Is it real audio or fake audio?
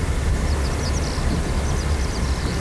real